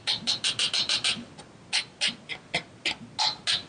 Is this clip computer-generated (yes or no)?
no